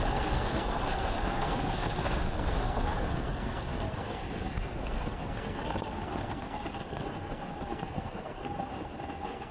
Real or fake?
fake